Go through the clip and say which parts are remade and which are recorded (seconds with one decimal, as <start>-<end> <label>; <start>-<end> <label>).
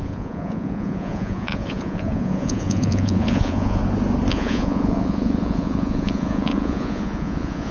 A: 0.0-3.8 remade; 3.8-4.3 recorded; 4.3-7.7 remade